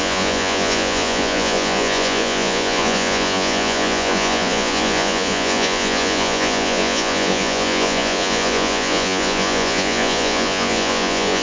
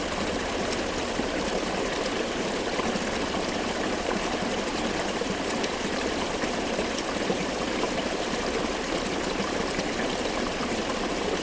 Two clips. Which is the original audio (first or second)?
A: second